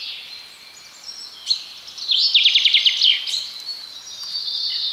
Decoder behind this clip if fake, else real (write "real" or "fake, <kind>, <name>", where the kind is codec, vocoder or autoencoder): real